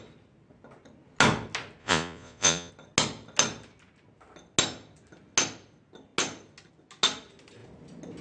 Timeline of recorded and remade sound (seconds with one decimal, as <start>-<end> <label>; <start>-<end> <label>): 0.0-1.8 recorded; 1.8-2.7 remade; 2.7-8.2 recorded